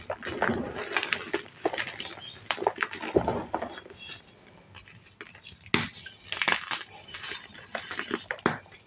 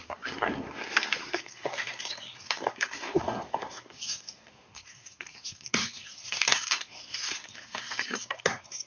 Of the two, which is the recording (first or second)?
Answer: first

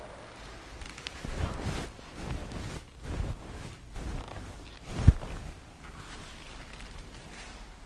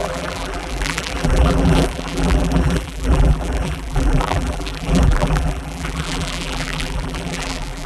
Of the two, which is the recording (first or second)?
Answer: first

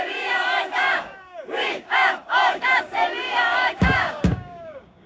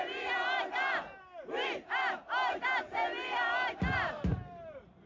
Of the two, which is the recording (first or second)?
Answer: second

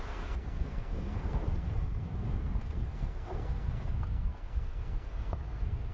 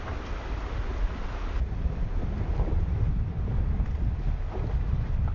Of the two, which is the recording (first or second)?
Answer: second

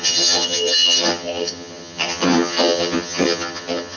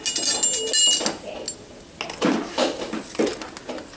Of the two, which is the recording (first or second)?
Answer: second